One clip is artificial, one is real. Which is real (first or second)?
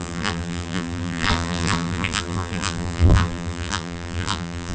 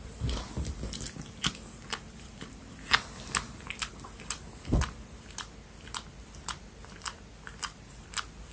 second